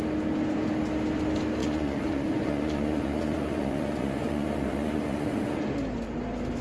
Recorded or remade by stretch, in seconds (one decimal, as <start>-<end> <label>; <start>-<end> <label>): 0.0-1.6 recorded; 1.6-5.6 remade; 5.6-6.6 recorded